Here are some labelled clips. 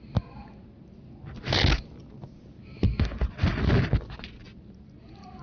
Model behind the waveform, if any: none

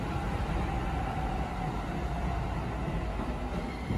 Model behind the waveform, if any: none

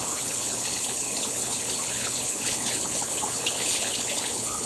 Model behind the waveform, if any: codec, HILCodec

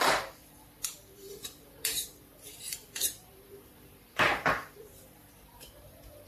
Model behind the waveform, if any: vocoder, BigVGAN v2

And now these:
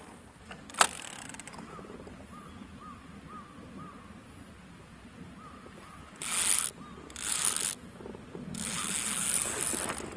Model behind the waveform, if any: none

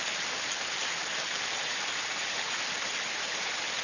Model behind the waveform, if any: none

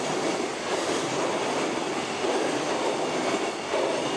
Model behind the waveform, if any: vocoder, BigVGAN v2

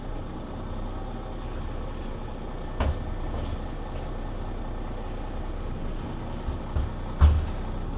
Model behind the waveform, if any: none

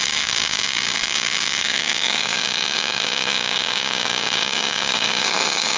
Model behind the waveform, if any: codec, DAC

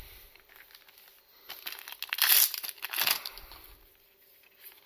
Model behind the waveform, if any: none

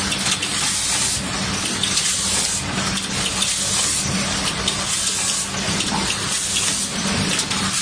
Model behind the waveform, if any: none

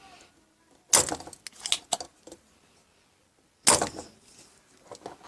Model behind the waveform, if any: none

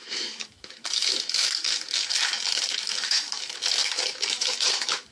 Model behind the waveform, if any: autoencoder, DAC-VAE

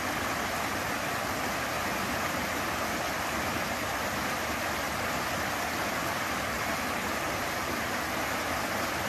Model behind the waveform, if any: none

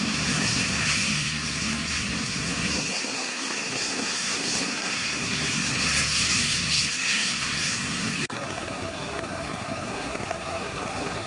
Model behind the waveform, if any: codec, SNAC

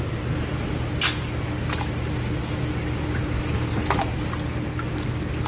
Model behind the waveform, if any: none